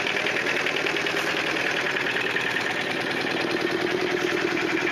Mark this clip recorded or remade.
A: remade